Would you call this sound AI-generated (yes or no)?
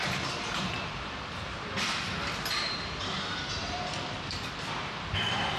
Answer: yes